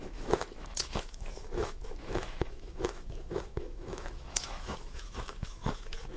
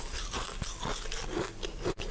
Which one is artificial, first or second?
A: first